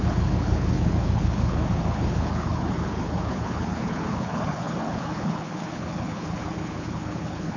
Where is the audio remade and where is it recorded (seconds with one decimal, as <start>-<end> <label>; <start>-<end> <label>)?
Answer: 0.0-7.6 remade

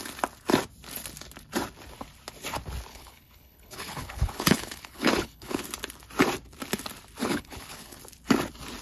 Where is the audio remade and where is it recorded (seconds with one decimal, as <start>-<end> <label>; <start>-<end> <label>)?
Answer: 0.0-2.9 recorded; 2.9-5.6 remade; 5.6-7.2 recorded; 7.2-8.0 remade; 8.0-8.8 recorded

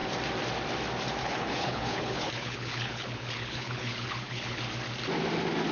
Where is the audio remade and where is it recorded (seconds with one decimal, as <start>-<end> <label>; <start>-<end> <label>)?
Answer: 0.0-1.2 recorded; 1.2-4.6 remade; 4.6-5.7 recorded

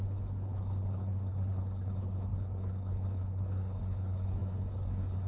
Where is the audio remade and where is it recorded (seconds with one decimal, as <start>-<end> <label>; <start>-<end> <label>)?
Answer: 0.0-5.3 remade

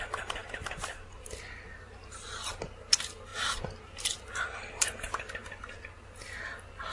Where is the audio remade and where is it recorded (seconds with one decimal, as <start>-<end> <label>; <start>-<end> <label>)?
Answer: 0.0-6.9 recorded

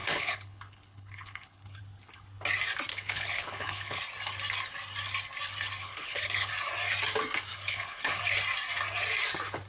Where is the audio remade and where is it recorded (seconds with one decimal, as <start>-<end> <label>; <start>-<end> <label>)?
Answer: 0.0-1.8 remade; 1.8-2.9 recorded; 2.9-4.0 remade; 4.0-5.8 recorded; 5.8-6.5 remade; 6.5-7.5 recorded; 7.5-8.2 remade; 8.2-9.7 recorded

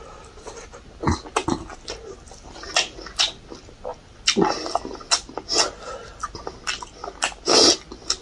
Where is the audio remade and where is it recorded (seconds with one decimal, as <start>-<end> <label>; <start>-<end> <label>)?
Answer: 0.0-8.2 recorded